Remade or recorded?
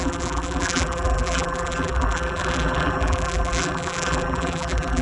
remade